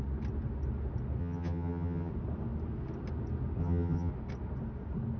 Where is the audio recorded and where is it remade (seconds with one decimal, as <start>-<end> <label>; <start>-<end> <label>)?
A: 0.0-1.2 recorded; 1.2-2.1 remade; 2.1-3.6 recorded; 3.6-4.1 remade; 4.1-5.2 recorded

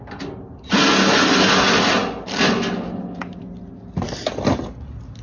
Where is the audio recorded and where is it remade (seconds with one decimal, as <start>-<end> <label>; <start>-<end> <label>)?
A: 0.0-5.2 recorded

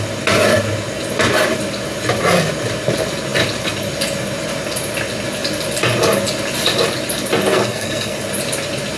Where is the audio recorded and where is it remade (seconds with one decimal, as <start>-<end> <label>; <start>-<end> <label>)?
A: 0.0-7.5 recorded; 7.5-8.2 remade; 8.2-9.0 recorded

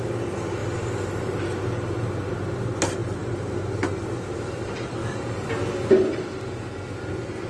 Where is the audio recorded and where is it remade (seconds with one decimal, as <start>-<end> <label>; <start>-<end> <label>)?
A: 0.0-7.5 recorded